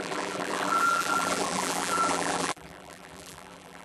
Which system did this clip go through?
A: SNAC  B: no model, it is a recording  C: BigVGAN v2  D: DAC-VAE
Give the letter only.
C